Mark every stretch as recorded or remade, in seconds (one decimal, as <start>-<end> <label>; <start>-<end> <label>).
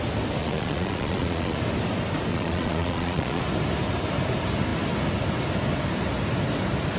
0.0-0.4 recorded; 0.4-1.6 remade; 1.6-2.3 recorded; 2.3-3.4 remade; 3.4-7.0 recorded